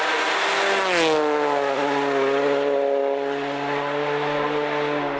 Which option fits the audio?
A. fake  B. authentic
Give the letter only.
B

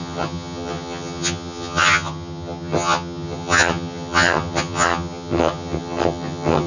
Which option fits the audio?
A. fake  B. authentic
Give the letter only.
A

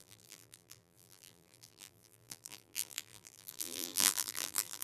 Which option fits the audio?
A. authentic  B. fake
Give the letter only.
B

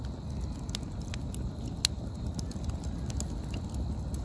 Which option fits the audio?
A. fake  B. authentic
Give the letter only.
B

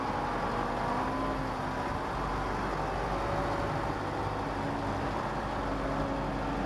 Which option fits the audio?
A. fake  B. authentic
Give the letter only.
B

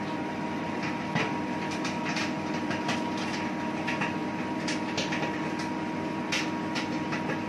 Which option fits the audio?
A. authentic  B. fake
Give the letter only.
B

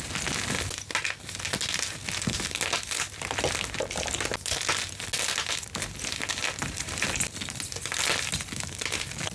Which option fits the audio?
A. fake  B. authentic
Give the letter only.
B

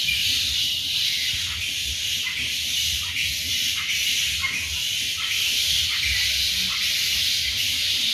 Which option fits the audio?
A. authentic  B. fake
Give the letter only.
A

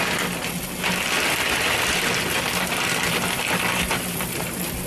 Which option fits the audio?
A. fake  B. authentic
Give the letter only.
B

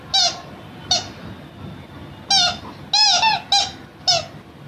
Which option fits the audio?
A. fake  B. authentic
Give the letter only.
B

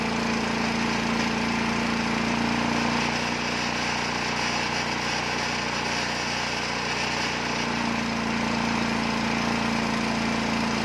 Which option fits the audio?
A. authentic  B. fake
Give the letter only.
A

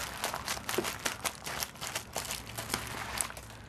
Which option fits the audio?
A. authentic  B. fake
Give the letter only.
A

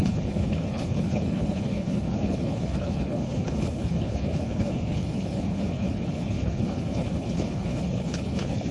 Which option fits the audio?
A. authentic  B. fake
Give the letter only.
B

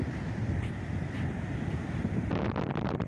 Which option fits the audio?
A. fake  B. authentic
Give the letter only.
A